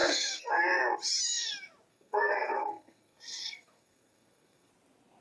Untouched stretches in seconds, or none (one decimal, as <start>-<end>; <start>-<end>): 0.6-1.9; 4.7-5.2